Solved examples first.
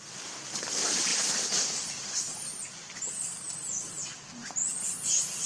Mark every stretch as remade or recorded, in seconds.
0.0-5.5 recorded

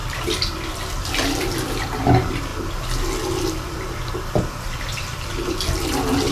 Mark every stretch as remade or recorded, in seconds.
0.0-1.0 recorded; 1.0-2.5 remade; 2.5-4.5 recorded; 4.5-6.3 remade

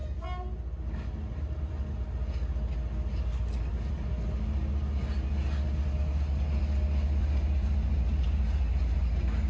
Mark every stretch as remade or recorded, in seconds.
0.0-9.5 recorded

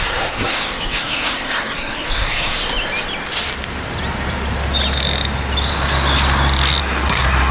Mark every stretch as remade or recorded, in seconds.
0.0-2.6 remade; 2.6-6.8 recorded; 6.8-7.5 remade

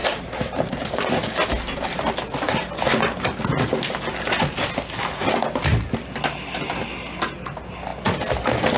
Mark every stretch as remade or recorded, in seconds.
0.0-1.3 remade; 1.3-8.8 recorded

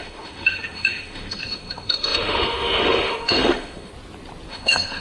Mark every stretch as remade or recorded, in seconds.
0.0-3.9 remade; 3.9-4.5 recorded; 4.5-5.0 remade